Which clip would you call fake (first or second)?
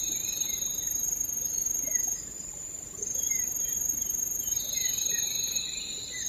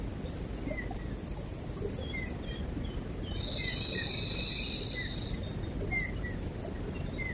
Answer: first